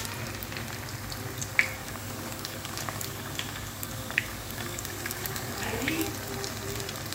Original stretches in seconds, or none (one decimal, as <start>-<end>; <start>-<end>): 0.0-1.8; 6.1-7.1